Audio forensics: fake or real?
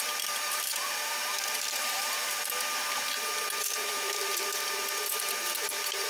fake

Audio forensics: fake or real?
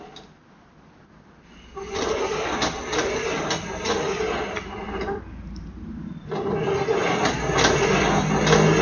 real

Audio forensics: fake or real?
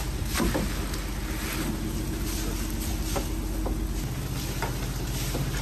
real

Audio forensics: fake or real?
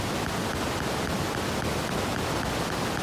real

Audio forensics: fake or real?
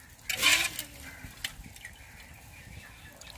real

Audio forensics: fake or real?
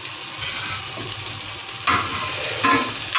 real